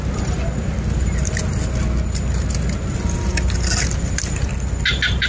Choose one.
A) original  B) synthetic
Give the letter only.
A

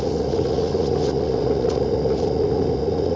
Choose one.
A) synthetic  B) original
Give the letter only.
A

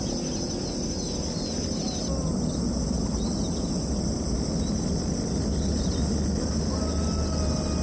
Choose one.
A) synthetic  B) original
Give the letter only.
B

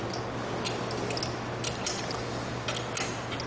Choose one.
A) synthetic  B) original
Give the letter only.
B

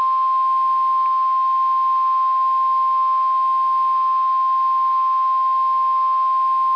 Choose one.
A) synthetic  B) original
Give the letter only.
B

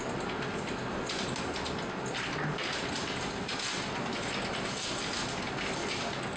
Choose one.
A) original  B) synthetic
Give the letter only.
A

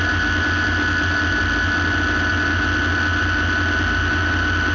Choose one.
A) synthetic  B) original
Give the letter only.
B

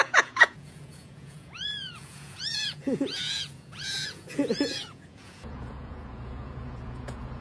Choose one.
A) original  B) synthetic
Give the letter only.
B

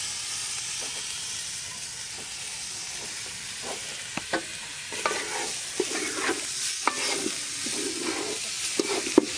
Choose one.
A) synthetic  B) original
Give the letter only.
B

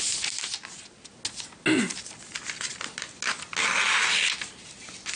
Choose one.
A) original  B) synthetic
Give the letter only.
A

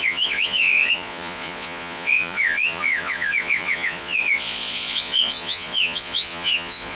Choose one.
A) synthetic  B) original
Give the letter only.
A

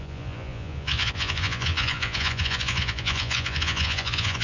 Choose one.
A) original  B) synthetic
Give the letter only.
B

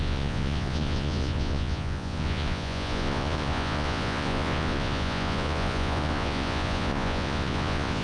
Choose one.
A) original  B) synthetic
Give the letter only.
B